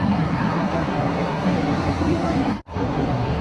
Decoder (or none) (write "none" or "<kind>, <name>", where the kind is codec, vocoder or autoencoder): codec, SNAC